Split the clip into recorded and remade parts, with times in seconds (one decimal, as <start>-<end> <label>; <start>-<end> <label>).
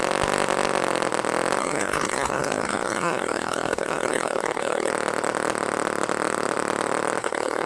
0.0-1.6 recorded; 1.6-4.9 remade; 4.9-7.2 recorded; 7.2-7.7 remade